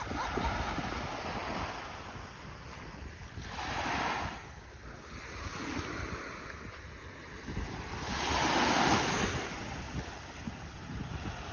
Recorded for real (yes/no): yes